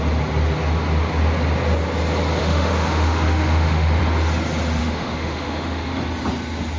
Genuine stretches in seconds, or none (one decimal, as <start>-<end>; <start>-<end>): 0.0-2.4; 4.0-4.8; 6.0-6.8